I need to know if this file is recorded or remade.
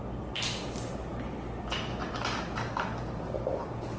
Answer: recorded